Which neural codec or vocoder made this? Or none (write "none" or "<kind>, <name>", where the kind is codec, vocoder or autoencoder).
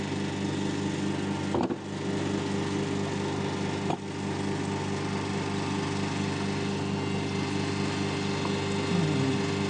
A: none